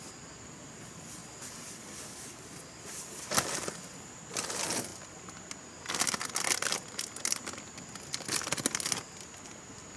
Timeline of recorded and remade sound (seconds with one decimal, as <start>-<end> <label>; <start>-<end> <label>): 0.0-10.0 recorded